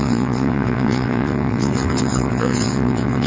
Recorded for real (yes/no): no